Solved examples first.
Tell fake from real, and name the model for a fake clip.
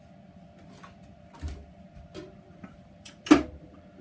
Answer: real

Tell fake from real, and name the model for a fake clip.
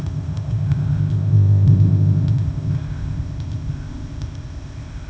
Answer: fake, codec, ZipCodec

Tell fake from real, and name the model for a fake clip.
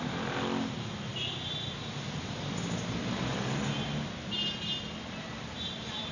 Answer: real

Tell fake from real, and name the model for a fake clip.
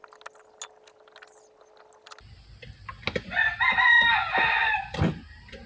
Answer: real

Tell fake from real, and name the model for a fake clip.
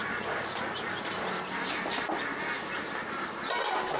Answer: real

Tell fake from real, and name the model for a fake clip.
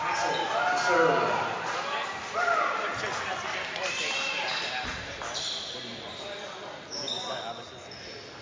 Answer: real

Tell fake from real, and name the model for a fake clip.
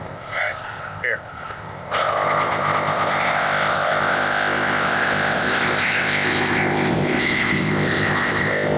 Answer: fake, codec, ZipCodec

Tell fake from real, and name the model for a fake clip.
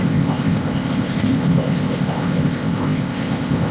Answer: fake, codec, ZipCodec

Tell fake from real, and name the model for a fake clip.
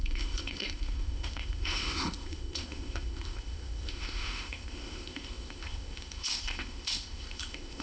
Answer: fake, codec, ZipCodec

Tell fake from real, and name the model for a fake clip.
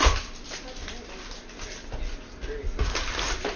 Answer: real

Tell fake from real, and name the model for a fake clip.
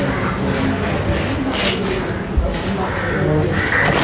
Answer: real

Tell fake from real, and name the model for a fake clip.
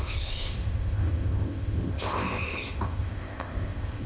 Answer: fake, codec, ZipCodec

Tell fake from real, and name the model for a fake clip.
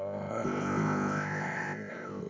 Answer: fake, codec, ZipCodec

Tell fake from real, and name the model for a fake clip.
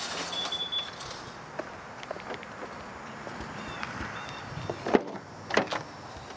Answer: real